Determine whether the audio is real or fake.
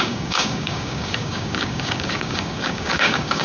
fake